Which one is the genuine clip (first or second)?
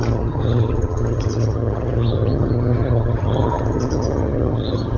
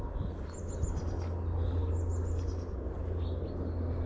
second